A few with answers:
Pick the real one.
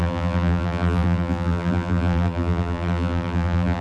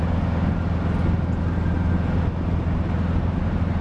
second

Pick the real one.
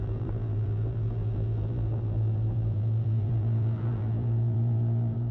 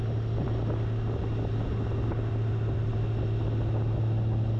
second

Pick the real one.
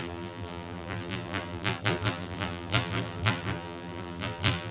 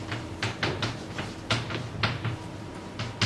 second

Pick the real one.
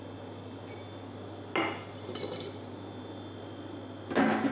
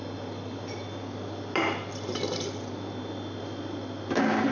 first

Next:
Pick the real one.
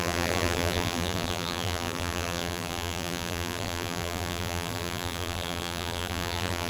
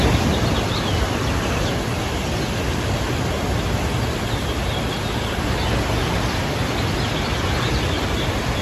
second